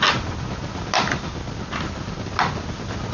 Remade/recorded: recorded